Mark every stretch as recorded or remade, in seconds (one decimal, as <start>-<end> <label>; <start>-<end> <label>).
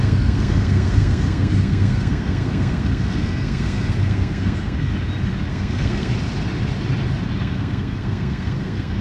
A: 0.0-4.9 remade; 4.9-5.5 recorded; 5.5-6.1 remade; 6.1-7.4 recorded; 7.4-9.0 remade